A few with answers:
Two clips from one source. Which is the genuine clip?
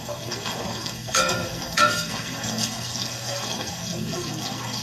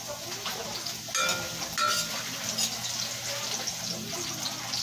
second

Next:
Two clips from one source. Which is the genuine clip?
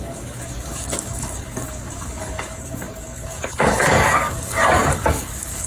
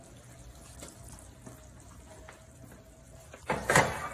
second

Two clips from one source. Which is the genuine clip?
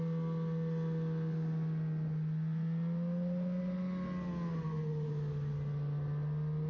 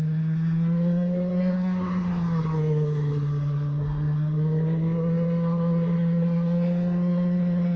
first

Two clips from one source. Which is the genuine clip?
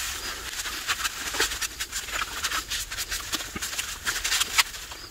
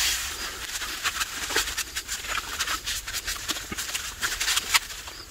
first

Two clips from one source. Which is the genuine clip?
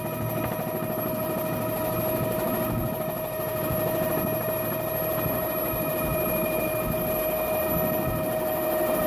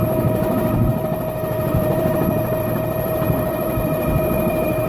first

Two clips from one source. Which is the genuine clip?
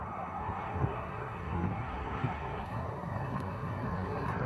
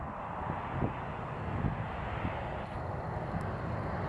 second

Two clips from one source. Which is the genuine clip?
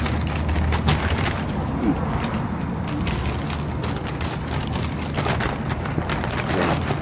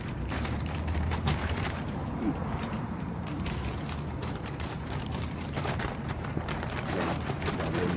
first